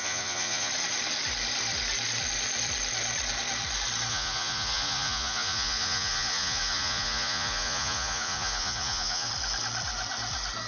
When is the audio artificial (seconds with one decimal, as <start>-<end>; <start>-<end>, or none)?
0.0-0.7; 4.1-9.3